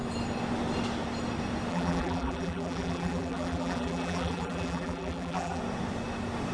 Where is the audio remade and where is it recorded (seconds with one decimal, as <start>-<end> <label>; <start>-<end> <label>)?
0.0-1.7 recorded; 1.7-5.6 remade; 5.6-6.5 recorded